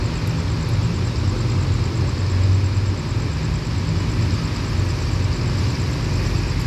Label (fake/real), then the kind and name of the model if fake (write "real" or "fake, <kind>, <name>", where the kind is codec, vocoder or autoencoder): real